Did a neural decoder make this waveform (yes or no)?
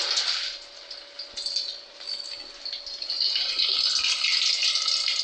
no